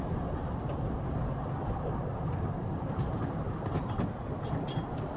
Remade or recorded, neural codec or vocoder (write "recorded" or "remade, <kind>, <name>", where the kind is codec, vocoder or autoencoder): recorded